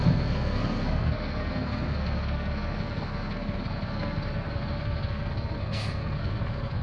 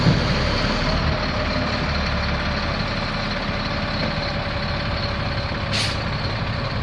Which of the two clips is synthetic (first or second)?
first